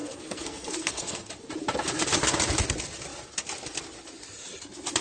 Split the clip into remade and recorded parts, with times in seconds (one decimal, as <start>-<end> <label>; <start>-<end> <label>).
0.0-1.3 remade; 1.3-5.0 recorded